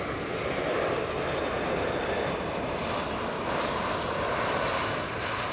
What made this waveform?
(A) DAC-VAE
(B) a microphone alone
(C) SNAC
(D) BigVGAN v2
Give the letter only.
B